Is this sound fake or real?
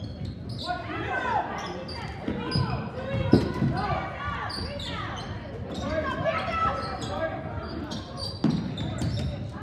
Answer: real